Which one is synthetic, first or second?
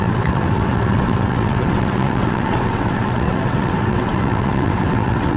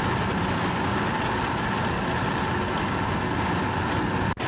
first